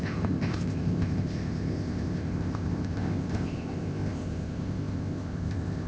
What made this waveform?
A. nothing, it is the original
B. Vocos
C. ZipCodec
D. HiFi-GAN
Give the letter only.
C